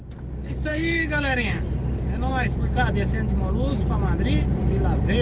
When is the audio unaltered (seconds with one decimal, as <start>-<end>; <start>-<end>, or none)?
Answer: 0.0-0.7; 1.6-5.2